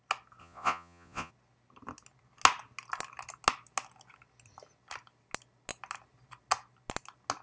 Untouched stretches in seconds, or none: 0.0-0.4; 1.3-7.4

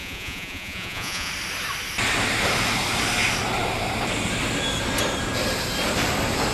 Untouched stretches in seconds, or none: 1.3-6.5

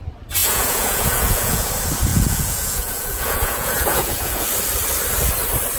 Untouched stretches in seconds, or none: 0.0-0.4; 1.7-2.1; 4.5-5.8

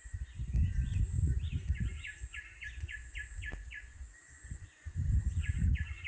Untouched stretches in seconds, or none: none

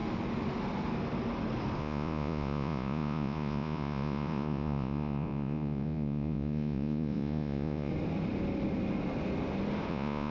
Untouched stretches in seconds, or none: 0.0-1.8; 7.9-9.9